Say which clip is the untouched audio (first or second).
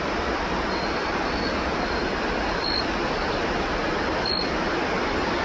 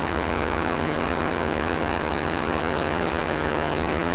first